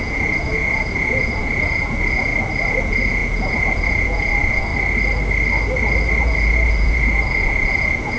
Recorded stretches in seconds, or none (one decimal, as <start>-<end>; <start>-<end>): 2.3-2.8; 4.7-6.2